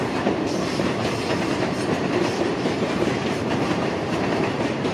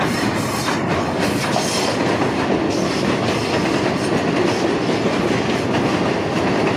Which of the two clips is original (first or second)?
second